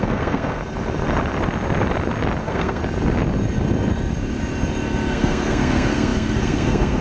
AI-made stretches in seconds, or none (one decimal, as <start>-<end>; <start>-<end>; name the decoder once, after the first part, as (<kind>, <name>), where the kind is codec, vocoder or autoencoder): 0.0-0.6 (codec, SNAC); 2.4-2.8; 5.1-7.0